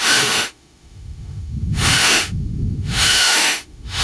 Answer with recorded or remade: remade